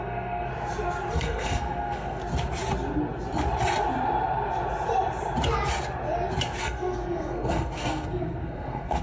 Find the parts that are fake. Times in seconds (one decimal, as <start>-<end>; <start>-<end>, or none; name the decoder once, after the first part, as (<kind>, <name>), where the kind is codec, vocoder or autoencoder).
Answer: 0.0-0.5 (codec, SNAC); 1.1-2.2; 6.6-9.0